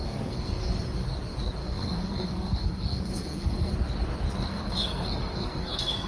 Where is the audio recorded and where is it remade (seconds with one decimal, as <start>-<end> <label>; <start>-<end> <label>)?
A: 0.0-0.7 remade; 0.7-1.6 recorded; 1.6-3.7 remade; 3.7-4.5 recorded; 4.5-6.1 remade